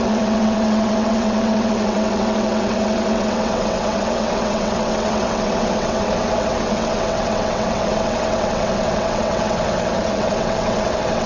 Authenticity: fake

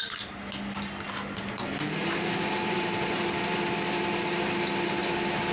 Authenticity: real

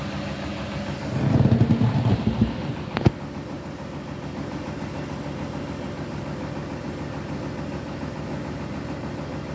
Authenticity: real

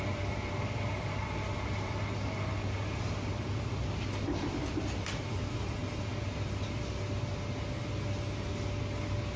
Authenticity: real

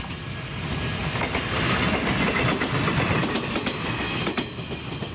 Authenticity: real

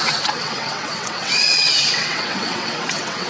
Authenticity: fake